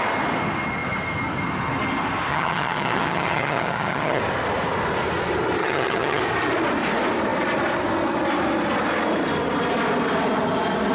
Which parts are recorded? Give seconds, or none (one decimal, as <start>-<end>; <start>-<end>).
0.0-2.3; 4.2-5.6; 6.2-10.9